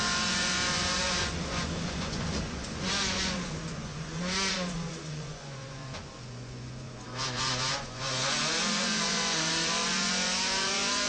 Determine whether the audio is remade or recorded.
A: remade